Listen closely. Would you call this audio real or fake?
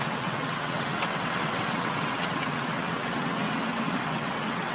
fake